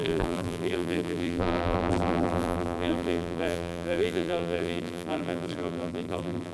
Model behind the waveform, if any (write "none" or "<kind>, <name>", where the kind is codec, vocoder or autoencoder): vocoder, BigVGAN v2